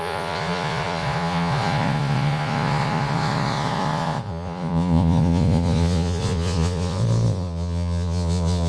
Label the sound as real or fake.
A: fake